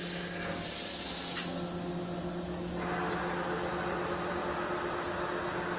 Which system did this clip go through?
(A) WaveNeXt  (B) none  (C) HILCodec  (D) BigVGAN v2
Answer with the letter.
B